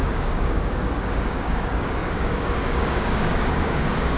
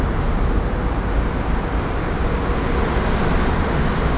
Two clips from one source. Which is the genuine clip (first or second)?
second